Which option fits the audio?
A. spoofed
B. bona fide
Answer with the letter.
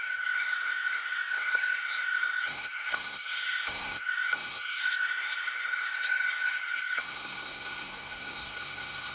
A